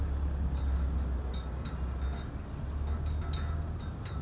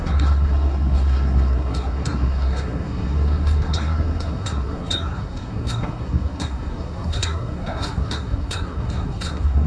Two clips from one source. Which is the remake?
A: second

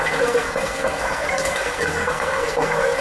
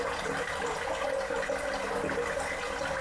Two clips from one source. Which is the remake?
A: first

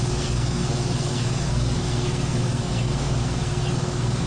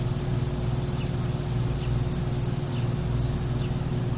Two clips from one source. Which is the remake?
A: first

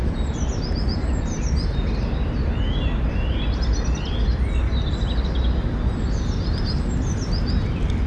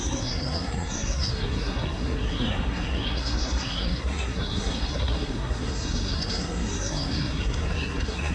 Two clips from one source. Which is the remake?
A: second